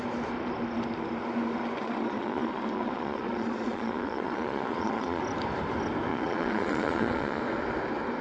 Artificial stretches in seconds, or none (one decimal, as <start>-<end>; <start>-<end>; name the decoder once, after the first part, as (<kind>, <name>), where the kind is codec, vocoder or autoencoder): 1.8-5.2 (vocoder, Vocos); 6.1-7.4